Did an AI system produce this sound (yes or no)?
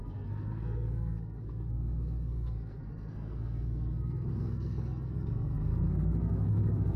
yes